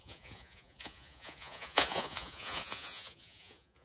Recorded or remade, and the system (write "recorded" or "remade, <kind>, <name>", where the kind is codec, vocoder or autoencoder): remade, vocoder, Vocos